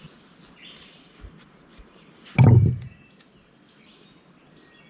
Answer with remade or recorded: recorded